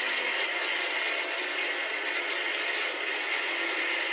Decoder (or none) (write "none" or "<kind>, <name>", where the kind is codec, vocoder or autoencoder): none